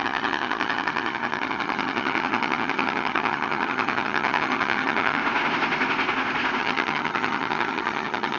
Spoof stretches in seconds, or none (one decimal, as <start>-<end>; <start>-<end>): 0.0-5.2; 6.6-8.4